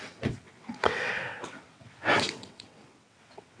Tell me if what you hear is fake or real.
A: fake